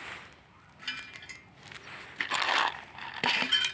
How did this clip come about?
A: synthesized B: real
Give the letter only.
B